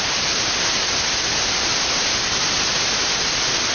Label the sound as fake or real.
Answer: real